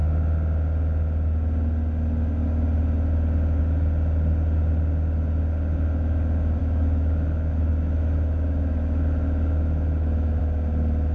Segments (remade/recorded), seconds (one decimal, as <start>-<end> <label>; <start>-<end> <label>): 0.0-6.6 recorded; 6.6-10.4 remade; 10.4-11.1 recorded